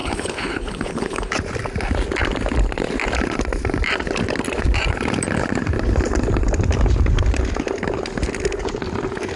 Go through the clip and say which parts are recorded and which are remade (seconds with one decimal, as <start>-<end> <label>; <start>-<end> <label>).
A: 0.0-1.3 remade; 1.3-9.4 recorded